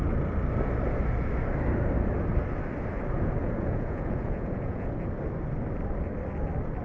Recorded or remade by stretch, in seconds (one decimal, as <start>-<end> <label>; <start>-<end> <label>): 0.0-3.4 recorded; 3.4-4.9 remade; 4.9-6.8 recorded